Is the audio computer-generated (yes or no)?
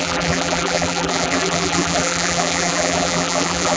yes